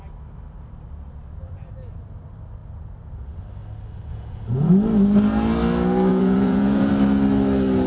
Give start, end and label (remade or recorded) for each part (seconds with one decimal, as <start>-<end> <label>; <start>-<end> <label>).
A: 0.0-4.1 recorded; 4.1-4.7 remade; 4.7-6.1 recorded; 6.1-6.9 remade; 6.9-7.9 recorded